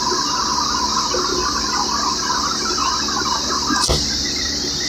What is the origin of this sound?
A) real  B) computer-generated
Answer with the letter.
A